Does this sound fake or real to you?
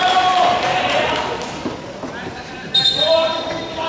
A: fake